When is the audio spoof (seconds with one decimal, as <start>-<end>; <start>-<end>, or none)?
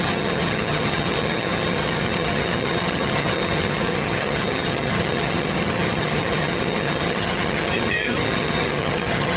0.0-9.4